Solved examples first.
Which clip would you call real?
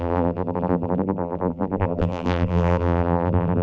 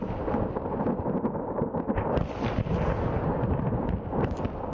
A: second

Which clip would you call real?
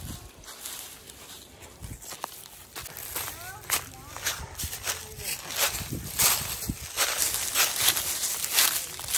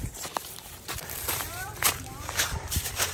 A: first